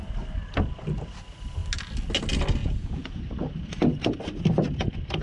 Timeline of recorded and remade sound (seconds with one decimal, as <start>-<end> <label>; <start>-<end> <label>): 0.0-2.6 recorded; 2.6-3.2 remade; 3.2-5.2 recorded